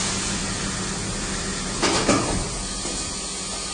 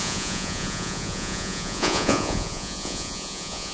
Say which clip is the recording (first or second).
first